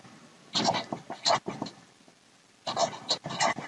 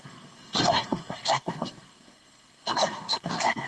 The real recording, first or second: first